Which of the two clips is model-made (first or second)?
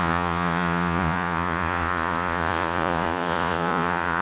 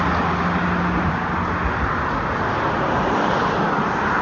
first